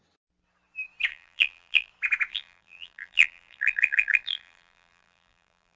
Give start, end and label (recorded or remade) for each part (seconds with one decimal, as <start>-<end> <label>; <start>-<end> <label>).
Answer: 0.0-1.1 recorded; 1.1-1.9 remade; 1.9-2.3 recorded; 2.3-5.8 remade